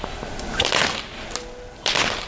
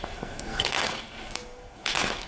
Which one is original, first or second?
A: first